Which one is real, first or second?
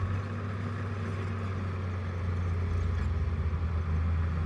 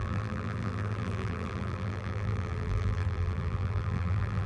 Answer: first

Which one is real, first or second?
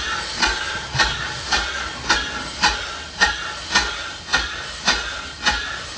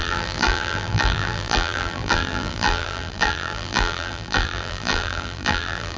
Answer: first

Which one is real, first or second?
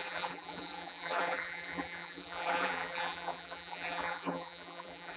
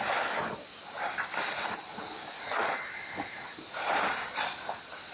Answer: second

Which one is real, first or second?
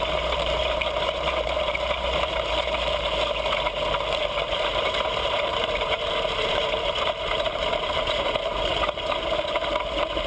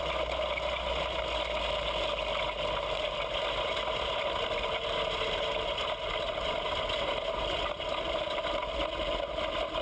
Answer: second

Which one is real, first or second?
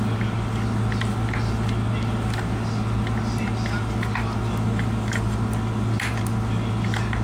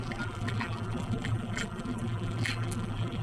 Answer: first